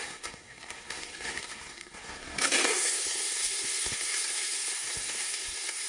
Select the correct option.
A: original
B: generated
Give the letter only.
B